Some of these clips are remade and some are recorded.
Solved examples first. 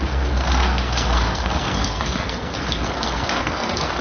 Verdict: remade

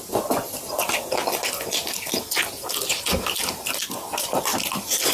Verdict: recorded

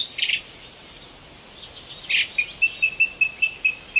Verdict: recorded